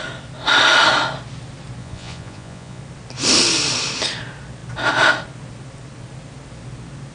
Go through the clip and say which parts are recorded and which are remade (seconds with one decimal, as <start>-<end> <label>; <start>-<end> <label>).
0.0-1.8 recorded; 1.8-2.8 remade; 2.8-7.1 recorded